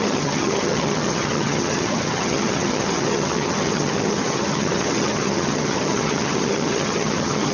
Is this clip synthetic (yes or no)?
yes